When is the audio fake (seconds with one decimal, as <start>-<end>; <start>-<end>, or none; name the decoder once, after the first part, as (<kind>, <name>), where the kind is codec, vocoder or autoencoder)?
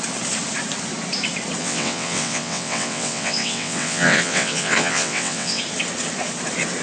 1.6-5.6 (vocoder, WaveNeXt)